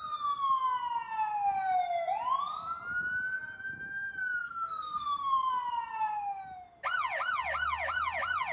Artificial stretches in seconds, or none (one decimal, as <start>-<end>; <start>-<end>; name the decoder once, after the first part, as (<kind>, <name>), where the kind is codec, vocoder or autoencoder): 4.4-5.5 (codec, SNAC)